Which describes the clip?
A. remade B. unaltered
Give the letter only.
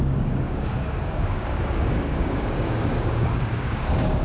A